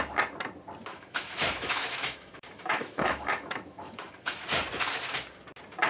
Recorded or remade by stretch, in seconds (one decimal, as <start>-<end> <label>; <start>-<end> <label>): 0.0-0.9 recorded; 0.9-4.4 remade; 4.4-5.9 recorded